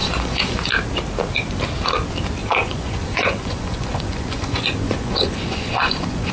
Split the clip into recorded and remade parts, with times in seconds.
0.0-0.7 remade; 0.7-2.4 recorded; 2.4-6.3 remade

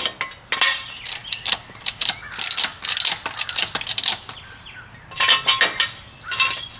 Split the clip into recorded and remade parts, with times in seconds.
0.0-6.8 recorded

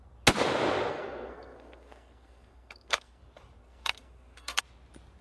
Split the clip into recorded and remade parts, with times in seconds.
0.0-0.9 recorded; 0.9-3.2 remade; 3.2-3.6 recorded; 3.6-4.6 remade; 4.6-5.2 recorded

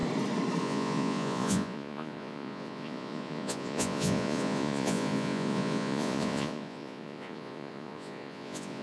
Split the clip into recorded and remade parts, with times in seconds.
0.0-0.6 recorded; 0.6-8.8 remade

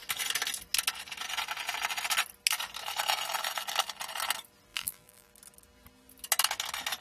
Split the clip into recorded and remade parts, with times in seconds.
0.0-4.7 recorded; 4.7-5.3 remade; 5.3-7.0 recorded